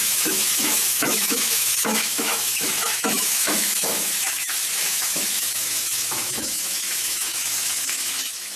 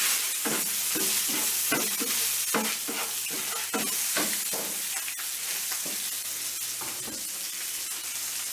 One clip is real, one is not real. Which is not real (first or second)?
first